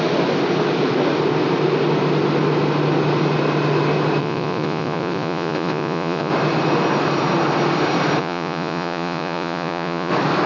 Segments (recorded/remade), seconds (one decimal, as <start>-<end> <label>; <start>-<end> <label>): 0.0-4.2 recorded; 4.2-6.3 remade; 6.3-8.2 recorded; 8.2-10.1 remade; 10.1-10.5 recorded